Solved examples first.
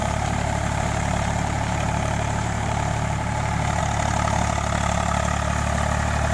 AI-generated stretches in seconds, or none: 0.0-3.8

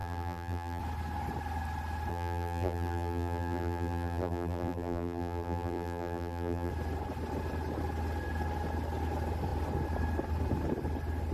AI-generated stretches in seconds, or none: 0.0-0.8; 2.1-6.7

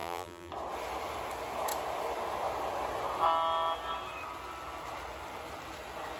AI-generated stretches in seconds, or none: 0.0-0.5

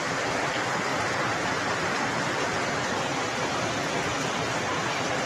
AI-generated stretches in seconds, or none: none

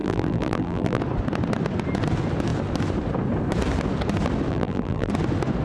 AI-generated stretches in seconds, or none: 0.0-1.0; 4.5-5.1

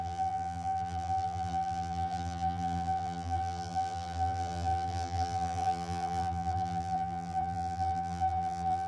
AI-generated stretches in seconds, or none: 0.0-8.9